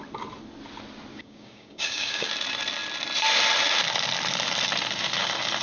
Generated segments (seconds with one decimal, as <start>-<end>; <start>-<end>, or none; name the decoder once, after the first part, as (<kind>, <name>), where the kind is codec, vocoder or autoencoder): 1.1-2.3 (codec, DAC)